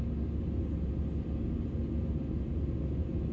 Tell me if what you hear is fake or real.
real